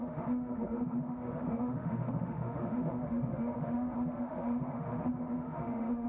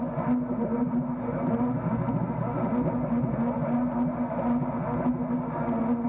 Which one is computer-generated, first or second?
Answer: first